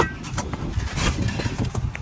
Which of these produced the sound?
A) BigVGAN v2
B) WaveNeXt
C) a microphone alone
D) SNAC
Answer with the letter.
C